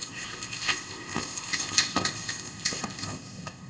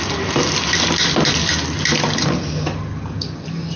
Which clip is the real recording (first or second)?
second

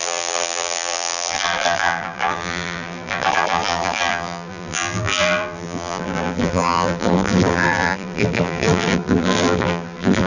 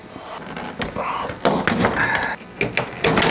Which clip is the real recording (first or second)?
second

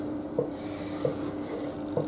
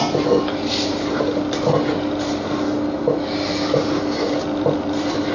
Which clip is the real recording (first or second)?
second